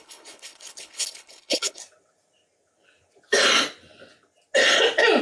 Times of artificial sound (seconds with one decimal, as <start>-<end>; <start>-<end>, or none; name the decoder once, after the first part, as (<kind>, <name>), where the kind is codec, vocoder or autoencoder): 0.0-1.8 (codec, HILCodec)